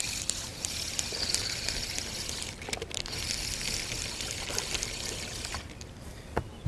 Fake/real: real